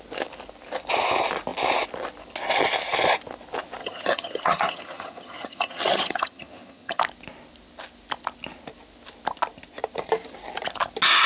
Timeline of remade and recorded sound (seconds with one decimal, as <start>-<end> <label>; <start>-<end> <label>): 0.0-3.8 recorded; 3.8-7.0 remade; 7.0-11.3 recorded